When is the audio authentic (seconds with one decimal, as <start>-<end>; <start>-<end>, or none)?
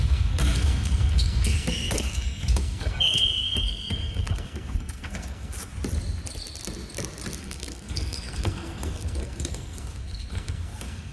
5.7-7.4